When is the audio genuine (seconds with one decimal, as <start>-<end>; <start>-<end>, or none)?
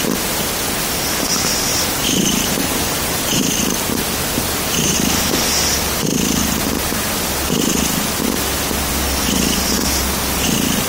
0.0-1.7; 3.4-10.9